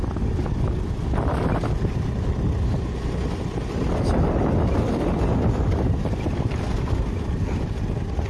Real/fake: real